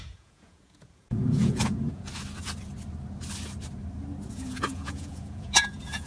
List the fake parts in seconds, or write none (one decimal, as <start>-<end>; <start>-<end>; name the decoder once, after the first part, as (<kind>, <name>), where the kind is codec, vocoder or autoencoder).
0.0-2.1 (vocoder, Vocos); 4.3-6.1